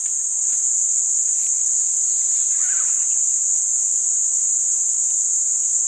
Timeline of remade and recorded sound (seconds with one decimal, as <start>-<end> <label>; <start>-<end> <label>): 0.0-5.9 recorded